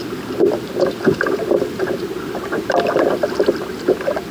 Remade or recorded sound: recorded